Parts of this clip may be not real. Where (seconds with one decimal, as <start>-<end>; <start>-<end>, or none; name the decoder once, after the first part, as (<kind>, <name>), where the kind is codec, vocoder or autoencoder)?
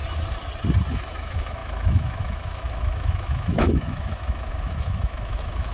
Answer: 0.9-5.7 (autoencoder, DAC-VAE)